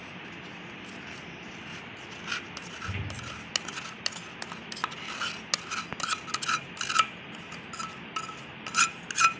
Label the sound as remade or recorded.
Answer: recorded